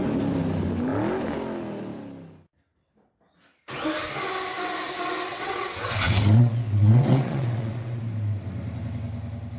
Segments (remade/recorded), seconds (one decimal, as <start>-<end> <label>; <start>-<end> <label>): 0.0-5.3 recorded; 5.3-8.0 remade; 8.0-9.6 recorded